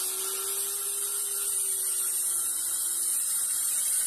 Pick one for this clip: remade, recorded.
recorded